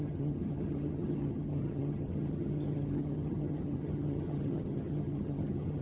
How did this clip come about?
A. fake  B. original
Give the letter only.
A